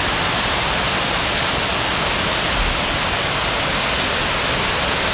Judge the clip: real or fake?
real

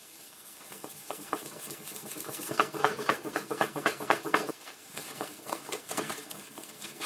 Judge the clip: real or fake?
fake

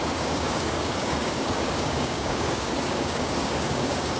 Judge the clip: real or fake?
fake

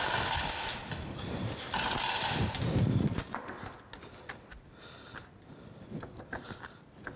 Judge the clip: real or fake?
real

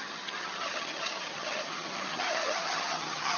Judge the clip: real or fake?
fake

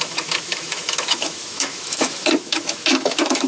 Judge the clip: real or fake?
fake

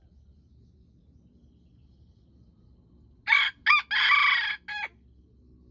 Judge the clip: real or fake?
real